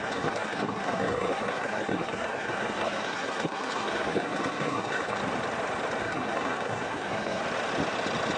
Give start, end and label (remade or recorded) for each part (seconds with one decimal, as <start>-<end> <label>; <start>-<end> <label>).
0.0-5.2 remade; 5.2-6.0 recorded; 6.0-7.4 remade; 7.4-8.4 recorded